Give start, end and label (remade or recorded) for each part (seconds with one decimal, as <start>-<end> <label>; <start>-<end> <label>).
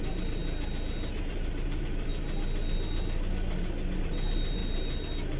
0.0-0.4 remade; 0.4-1.2 recorded; 1.2-2.1 remade; 2.1-4.0 recorded; 4.0-4.6 remade; 4.6-5.4 recorded